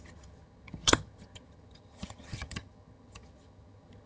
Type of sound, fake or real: fake